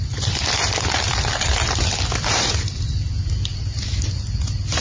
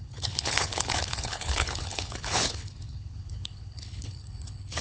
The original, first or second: first